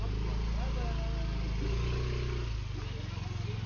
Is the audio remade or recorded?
recorded